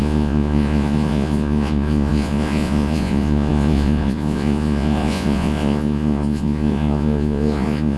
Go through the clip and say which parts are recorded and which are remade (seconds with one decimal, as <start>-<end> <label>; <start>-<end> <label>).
0.0-8.0 remade